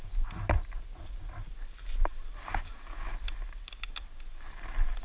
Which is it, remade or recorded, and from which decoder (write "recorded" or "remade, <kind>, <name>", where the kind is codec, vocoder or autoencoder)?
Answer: recorded